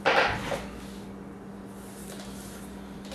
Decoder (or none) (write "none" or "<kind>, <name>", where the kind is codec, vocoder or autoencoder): none